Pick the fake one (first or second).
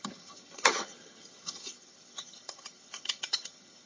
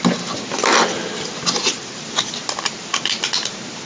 first